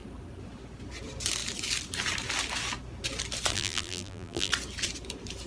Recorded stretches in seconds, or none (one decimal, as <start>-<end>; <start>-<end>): 0.0-3.5; 4.5-5.5